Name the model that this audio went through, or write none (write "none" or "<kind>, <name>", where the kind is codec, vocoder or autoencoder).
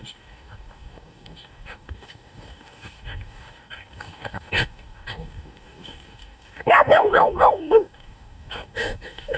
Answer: codec, DAC